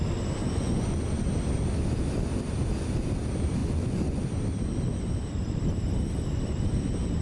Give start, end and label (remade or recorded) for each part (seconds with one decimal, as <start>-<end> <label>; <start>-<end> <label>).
0.0-0.4 recorded; 0.4-1.0 remade; 1.0-3.6 recorded; 3.6-4.2 remade; 4.2-7.2 recorded